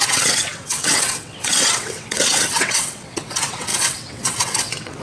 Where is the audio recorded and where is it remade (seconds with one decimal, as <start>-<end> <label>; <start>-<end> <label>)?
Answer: 0.0-5.0 remade